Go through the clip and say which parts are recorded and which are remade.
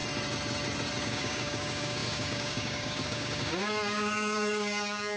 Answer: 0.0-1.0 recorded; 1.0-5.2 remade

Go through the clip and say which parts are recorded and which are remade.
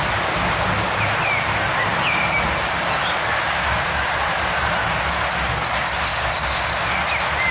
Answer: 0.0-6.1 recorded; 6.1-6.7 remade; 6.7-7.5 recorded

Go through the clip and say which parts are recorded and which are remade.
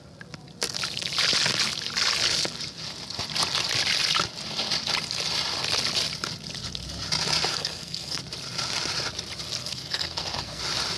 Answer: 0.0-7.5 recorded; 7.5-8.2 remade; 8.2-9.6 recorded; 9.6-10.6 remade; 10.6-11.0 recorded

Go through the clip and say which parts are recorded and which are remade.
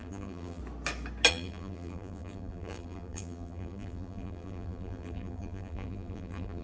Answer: 0.0-0.6 remade; 0.6-1.3 recorded; 1.3-6.6 remade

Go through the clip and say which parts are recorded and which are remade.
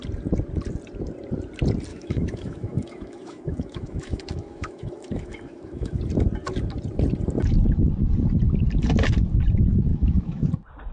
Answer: 0.0-1.9 recorded; 1.9-6.0 remade; 6.0-9.9 recorded; 9.9-10.5 remade; 10.5-10.9 recorded